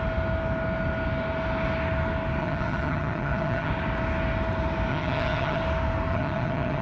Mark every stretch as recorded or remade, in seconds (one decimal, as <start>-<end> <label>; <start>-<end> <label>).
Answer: 0.0-2.4 recorded; 2.4-3.7 remade; 3.7-4.9 recorded; 4.9-5.6 remade; 5.6-6.1 recorded; 6.1-6.8 remade